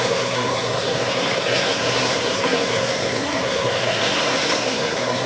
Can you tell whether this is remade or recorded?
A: remade